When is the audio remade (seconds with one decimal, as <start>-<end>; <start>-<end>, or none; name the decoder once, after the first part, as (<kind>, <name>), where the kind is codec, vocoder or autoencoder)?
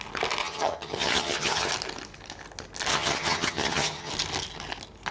0.4-1.7 (vocoder, HiFi-GAN); 2.9-4.1